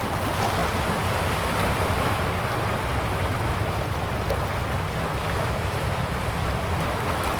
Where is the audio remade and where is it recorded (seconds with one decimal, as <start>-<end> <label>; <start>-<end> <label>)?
0.0-5.1 recorded; 5.1-6.0 remade; 6.0-7.4 recorded